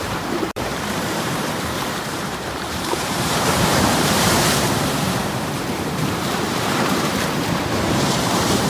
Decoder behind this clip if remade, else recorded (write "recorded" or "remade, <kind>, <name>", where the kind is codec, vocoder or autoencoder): remade, vocoder, BigVGAN v2